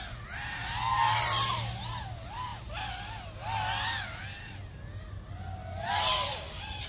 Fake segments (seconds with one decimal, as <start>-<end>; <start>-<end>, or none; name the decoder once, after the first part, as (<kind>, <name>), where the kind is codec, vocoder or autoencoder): 0.6-1.3 (vocoder, BigVGAN v2)